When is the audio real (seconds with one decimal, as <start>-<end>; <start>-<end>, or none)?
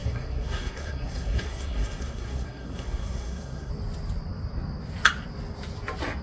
3.7-6.2